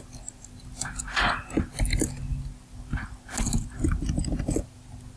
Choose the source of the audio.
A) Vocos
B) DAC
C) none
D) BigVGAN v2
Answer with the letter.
C